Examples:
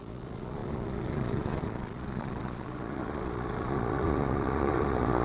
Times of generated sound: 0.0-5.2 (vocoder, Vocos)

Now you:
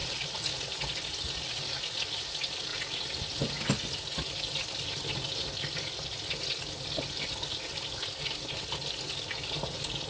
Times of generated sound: none

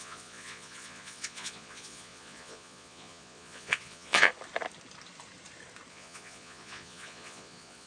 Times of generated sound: 0.0-4.3 (vocoder, Vocos); 5.9-7.9

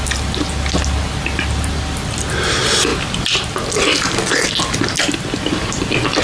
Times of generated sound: none

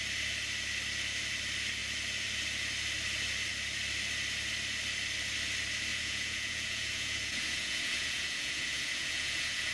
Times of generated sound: 5.9-9.7 (vocoder, Vocos)